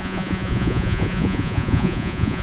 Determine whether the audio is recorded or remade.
remade